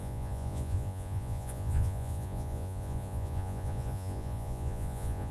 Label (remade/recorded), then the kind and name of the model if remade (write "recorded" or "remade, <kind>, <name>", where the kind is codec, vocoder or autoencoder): remade, vocoder, Vocos